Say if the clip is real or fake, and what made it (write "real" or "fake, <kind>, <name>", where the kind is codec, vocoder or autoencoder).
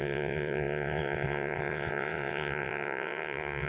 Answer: fake, vocoder, WaveNeXt